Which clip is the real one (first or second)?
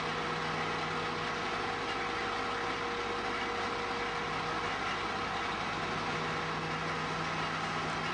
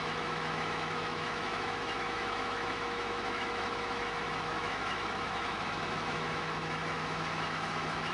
first